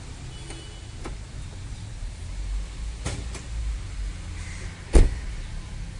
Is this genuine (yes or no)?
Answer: yes